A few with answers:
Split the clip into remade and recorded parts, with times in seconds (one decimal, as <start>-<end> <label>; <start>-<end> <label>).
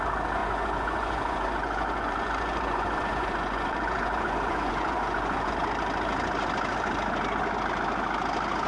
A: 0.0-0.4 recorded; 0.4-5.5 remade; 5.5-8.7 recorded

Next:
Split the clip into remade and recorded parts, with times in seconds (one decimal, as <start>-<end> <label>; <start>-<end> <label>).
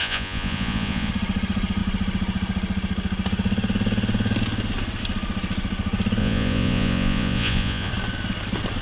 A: 0.0-1.1 remade; 1.1-6.2 recorded; 6.2-7.9 remade; 7.9-8.8 recorded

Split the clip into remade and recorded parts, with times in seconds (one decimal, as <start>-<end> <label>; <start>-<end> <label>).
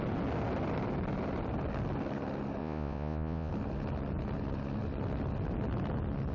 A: 0.0-2.6 recorded; 2.6-3.5 remade; 3.5-6.3 recorded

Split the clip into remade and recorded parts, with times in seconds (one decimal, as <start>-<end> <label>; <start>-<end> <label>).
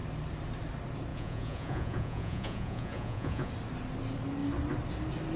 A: 0.0-1.1 recorded; 1.1-3.5 remade; 3.5-5.4 recorded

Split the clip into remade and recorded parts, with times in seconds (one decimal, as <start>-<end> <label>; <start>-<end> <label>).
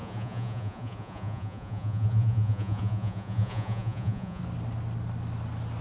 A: 0.0-4.4 remade; 4.4-5.8 recorded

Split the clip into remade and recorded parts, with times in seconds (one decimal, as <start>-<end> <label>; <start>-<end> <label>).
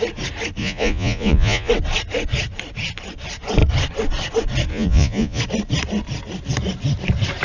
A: 0.0-0.6 recorded; 0.6-1.7 remade; 1.7-4.7 recorded; 4.7-5.4 remade; 5.4-7.4 recorded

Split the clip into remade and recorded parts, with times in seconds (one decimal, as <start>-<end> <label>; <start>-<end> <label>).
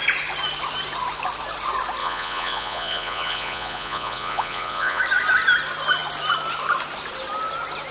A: 0.0-2.0 recorded; 2.0-5.0 remade; 5.0-7.9 recorded